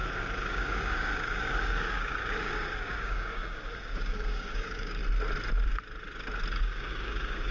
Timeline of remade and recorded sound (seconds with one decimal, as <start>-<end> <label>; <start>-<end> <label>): 0.0-5.0 remade; 5.0-6.6 recorded; 6.6-7.5 remade